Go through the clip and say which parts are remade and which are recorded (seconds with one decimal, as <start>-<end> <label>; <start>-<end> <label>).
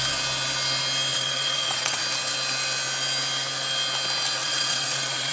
0.0-1.1 recorded; 1.1-2.0 remade; 2.0-4.4 recorded; 4.4-5.3 remade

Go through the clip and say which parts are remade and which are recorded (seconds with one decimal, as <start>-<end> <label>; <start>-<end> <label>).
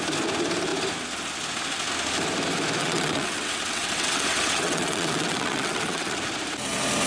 0.0-2.8 recorded; 2.8-6.2 remade; 6.2-7.1 recorded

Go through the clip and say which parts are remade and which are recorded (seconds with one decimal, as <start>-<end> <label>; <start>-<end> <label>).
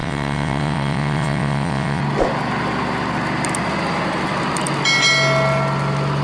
0.0-2.0 remade; 2.0-6.2 recorded